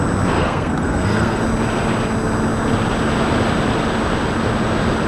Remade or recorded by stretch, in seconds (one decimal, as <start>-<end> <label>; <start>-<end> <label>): 0.0-0.4 recorded; 0.4-1.4 remade; 1.4-5.1 recorded